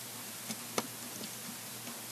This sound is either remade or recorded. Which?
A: recorded